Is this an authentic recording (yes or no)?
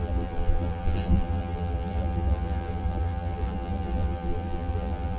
no